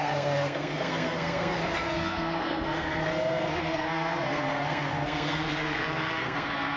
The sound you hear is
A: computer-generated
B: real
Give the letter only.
A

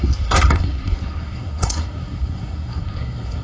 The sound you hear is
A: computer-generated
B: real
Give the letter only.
A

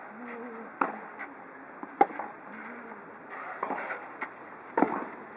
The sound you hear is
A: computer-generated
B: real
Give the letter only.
B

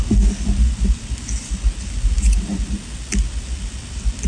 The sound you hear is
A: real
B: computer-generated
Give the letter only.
A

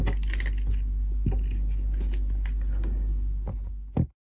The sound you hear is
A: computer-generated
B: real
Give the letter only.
B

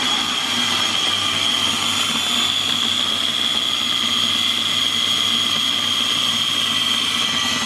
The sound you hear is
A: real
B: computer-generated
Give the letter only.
A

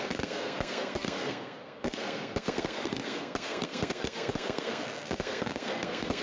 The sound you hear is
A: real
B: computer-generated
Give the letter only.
B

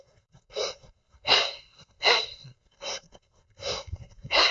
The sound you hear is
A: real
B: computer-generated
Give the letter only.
B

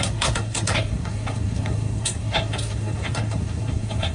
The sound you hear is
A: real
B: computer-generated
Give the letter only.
B